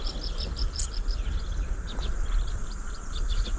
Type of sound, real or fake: fake